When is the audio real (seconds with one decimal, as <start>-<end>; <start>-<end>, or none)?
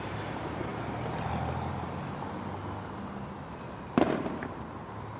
0.7-3.8